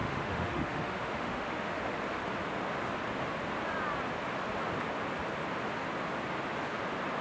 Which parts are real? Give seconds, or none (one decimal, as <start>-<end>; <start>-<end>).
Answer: 1.8-7.2